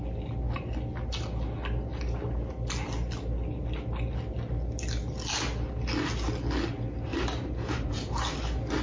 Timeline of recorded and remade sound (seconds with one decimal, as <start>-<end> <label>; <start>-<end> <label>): 0.0-7.1 recorded; 7.1-8.1 remade; 8.1-8.8 recorded